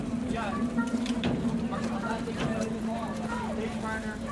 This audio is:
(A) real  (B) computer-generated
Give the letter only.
B